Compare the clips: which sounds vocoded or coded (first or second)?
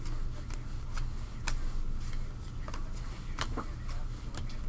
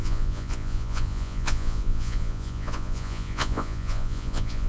second